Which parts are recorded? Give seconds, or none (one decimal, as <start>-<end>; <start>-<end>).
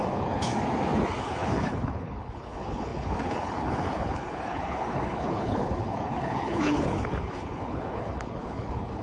0.5-1.2